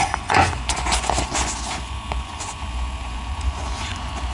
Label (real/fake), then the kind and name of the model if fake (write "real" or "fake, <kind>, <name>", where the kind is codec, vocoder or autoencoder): fake, vocoder, Vocos